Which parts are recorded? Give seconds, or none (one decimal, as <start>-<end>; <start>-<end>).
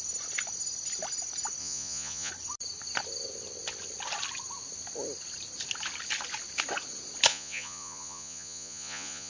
0.0-1.6; 2.3-7.3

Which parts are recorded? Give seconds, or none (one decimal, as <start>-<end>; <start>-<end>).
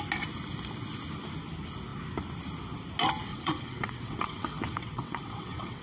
0.0-3.3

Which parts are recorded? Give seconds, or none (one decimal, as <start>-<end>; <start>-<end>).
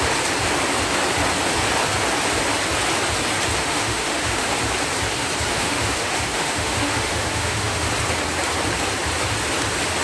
0.0-3.6; 4.5-5.5; 7.9-10.0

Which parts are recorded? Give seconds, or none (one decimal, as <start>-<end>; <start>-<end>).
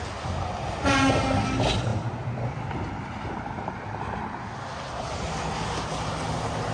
0.0-1.9; 4.0-6.7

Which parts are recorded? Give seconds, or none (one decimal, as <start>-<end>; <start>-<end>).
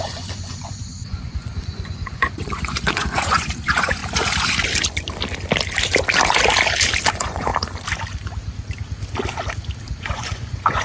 4.0-7.1; 7.5-10.0